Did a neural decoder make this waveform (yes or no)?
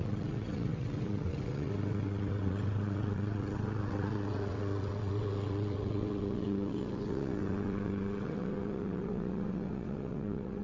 yes